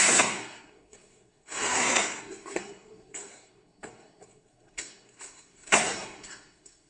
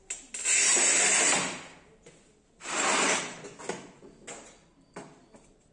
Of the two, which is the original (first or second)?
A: second